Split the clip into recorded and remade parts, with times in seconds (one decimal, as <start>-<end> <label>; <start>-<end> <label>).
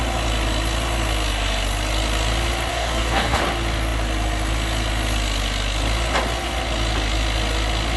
0.0-2.7 recorded; 2.7-3.4 remade; 3.4-8.0 recorded